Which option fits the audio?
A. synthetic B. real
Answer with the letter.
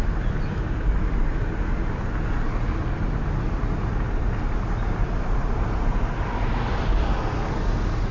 B